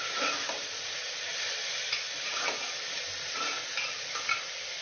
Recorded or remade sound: recorded